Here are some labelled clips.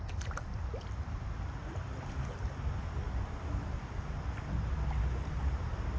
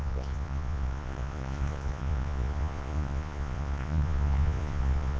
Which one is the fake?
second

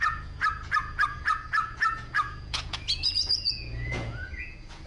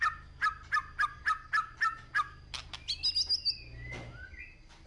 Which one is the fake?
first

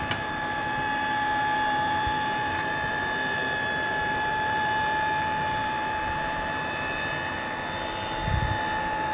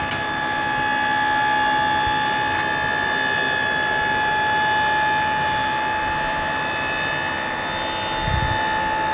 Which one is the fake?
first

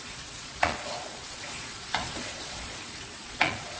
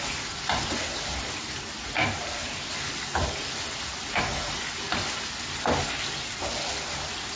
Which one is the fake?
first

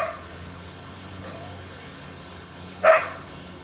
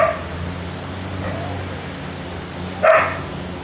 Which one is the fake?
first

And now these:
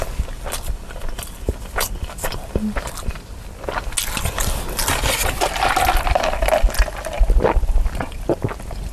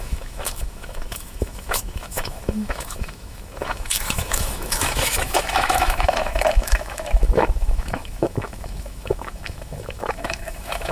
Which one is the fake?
second